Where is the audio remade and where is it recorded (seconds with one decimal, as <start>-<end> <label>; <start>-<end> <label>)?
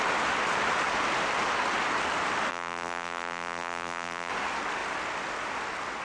0.0-2.5 recorded; 2.5-4.3 remade; 4.3-6.0 recorded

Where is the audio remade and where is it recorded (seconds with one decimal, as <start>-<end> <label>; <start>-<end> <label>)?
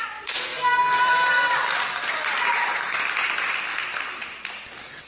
0.0-0.5 remade; 0.5-1.0 recorded; 1.0-5.1 remade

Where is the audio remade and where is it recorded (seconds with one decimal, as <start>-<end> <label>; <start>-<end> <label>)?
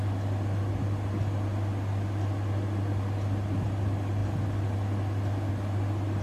0.0-6.2 recorded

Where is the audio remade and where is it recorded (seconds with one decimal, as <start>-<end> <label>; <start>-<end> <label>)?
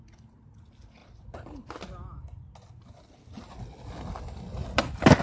0.0-5.2 recorded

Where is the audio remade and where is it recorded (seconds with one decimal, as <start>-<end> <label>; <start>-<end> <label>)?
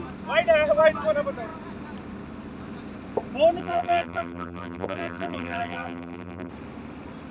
0.0-3.6 recorded; 3.6-6.5 remade; 6.5-7.3 recorded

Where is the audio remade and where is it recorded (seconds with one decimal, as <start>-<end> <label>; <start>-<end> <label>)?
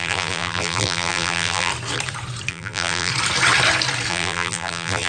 0.0-1.7 remade; 1.7-2.5 recorded; 2.5-3.1 remade; 3.1-4.1 recorded; 4.1-5.1 remade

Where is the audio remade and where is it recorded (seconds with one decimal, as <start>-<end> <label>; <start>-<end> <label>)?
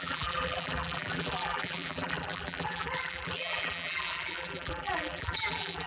0.0-5.9 remade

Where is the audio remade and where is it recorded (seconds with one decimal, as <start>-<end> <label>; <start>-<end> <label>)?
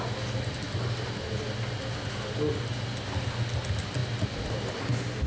0.0-5.3 recorded